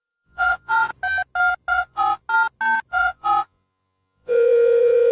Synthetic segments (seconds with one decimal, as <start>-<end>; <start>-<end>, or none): 0.0-0.9; 1.7-2.2; 2.9-5.1

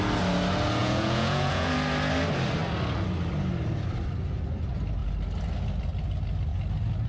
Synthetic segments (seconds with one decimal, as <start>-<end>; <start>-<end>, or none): 0.8-1.7

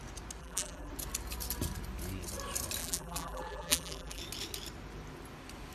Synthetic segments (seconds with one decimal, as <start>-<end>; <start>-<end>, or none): 0.4-0.9; 2.8-4.2

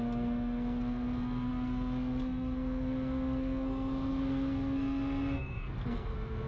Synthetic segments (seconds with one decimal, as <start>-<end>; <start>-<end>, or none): 0.0-6.5

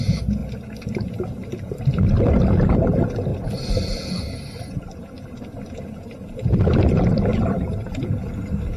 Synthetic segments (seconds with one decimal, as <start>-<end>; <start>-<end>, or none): 3.3-5.5; 7.3-8.0

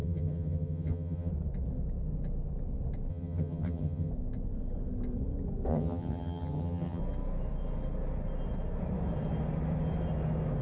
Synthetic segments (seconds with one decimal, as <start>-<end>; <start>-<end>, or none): 0.0-1.3; 3.1-4.1; 5.7-7.0

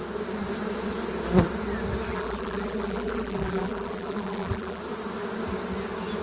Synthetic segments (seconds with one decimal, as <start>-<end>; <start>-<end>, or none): 2.1-4.8